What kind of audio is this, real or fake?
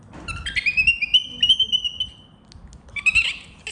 real